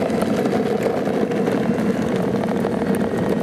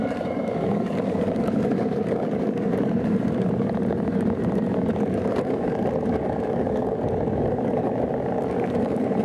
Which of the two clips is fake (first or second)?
second